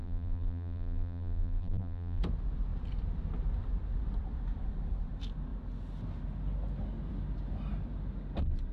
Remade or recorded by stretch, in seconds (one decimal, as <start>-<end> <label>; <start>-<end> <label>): 0.0-2.2 remade; 2.2-8.7 recorded